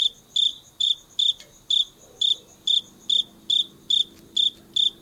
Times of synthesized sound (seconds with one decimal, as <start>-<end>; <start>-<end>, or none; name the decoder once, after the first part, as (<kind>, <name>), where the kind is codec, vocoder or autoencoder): 0.5-1.1 (vocoder, BigVGAN v2)